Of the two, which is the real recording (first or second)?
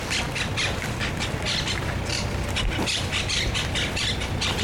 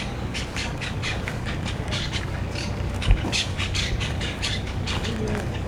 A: first